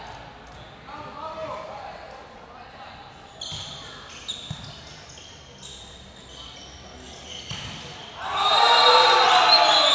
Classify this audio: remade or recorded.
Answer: recorded